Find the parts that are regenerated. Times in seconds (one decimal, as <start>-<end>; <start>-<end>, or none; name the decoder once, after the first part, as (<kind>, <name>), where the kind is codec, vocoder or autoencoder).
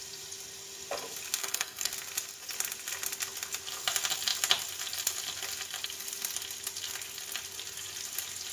1.4-1.9 (codec, SNAC)